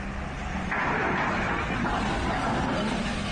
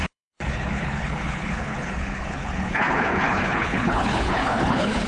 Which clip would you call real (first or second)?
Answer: first